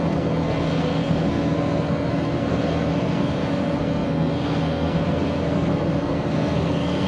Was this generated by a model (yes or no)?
yes